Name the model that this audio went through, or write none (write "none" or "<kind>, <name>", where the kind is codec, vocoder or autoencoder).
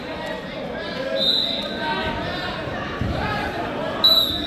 none